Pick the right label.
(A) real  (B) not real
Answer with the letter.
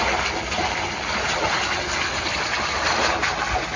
A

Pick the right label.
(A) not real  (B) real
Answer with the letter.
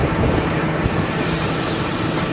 A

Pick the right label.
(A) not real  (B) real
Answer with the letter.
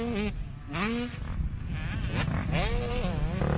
B